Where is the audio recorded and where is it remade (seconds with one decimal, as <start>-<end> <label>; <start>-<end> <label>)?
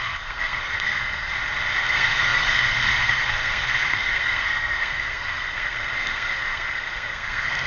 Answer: 0.0-1.3 remade; 1.3-1.8 recorded; 1.8-7.7 remade